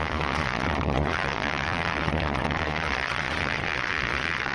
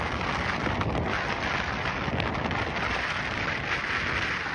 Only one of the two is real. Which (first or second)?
second